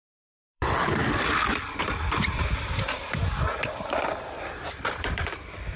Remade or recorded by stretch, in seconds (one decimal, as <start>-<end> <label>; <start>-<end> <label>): 0.0-2.4 remade; 2.4-4.4 recorded; 4.4-5.8 remade